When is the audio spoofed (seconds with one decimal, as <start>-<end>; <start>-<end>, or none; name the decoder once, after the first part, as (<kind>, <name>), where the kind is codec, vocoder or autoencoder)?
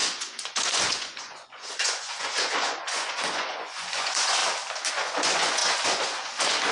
0.0-4.4 (vocoder, Vocos); 4.9-6.7